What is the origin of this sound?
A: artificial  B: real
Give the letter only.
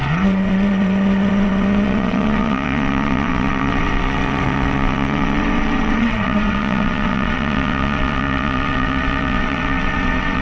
A